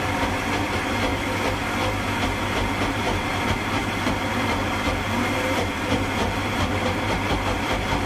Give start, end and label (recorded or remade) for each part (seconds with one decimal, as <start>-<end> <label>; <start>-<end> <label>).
0.0-1.1 remade; 1.1-2.9 recorded; 2.9-8.1 remade